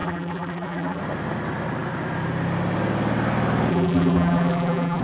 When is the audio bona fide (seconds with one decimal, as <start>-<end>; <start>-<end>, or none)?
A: 1.0-3.7